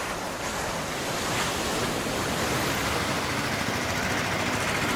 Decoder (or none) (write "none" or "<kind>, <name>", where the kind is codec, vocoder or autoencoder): none